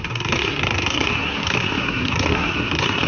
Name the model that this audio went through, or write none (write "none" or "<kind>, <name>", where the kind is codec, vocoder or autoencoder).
codec, SNAC